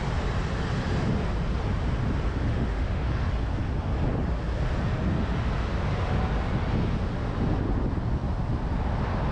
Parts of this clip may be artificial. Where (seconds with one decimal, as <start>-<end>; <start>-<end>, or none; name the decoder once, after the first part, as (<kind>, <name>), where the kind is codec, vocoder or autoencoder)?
2.5-3.0 (autoencoder, DAC-VAE)